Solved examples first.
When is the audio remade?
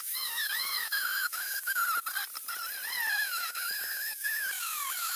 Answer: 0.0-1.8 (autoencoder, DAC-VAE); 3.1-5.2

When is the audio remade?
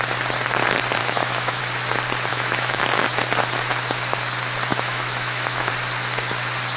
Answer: 1.0-1.6 (autoencoder, DAC-VAE); 2.3-2.8; 4.7-5.7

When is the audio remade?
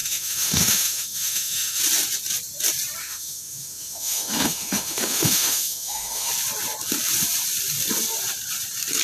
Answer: 0.0-1.8 (autoencoder, DAC-VAE); 3.0-6.3